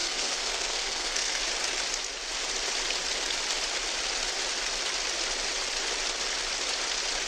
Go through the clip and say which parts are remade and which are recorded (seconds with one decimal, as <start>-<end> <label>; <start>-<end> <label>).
0.0-1.4 remade; 1.4-7.3 recorded